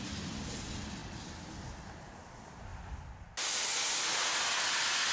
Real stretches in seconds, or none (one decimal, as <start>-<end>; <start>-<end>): 0.0-5.1